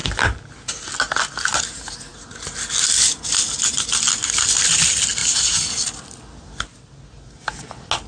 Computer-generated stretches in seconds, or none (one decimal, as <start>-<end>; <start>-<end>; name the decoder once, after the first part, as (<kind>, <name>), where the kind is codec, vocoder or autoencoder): none